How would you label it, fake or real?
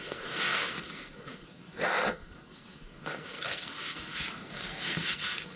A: fake